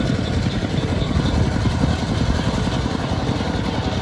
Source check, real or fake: real